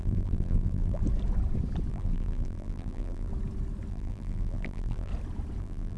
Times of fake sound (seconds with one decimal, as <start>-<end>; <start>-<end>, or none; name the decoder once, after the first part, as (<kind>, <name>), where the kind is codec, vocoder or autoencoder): 0.0-1.0 (vocoder, BigVGAN v2); 1.9-3.3; 3.9-5.1; 5.6-6.0

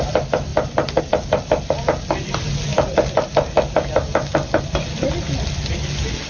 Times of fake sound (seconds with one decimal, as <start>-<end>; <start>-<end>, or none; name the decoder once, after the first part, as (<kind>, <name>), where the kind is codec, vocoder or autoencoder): none

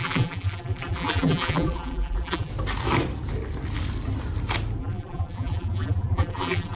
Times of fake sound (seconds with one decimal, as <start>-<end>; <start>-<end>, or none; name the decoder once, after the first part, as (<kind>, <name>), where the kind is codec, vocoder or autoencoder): 0.0-2.5 (vocoder, BigVGAN v2); 4.8-6.8

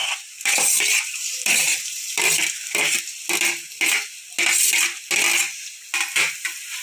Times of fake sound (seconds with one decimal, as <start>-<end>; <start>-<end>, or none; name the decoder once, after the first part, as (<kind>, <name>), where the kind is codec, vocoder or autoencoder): 0.0-3.0 (vocoder, BigVGAN v2)

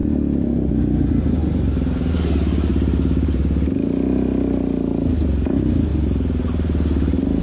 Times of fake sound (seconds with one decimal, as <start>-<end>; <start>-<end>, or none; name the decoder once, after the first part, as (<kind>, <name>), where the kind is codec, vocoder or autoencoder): 1.4-2.1 (vocoder, BigVGAN v2); 2.7-3.4

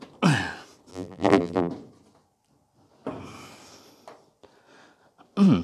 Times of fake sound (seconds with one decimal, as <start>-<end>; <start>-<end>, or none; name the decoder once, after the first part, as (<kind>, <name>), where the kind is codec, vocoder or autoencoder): 0.9-1.7 (vocoder, BigVGAN v2)

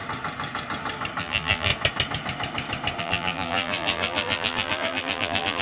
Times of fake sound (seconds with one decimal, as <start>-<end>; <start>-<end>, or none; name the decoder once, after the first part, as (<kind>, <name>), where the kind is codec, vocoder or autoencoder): 1.2-1.7 (vocoder, BigVGAN v2); 3.0-5.6

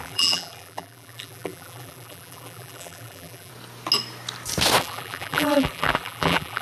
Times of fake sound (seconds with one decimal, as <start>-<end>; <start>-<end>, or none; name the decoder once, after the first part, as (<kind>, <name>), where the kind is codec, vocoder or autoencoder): 0.0-3.5 (vocoder, BigVGAN v2); 4.8-6.6